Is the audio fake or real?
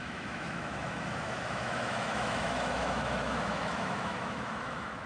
fake